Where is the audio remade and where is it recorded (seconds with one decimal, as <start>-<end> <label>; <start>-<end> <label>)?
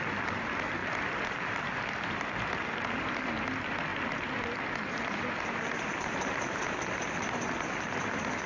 0.0-8.5 recorded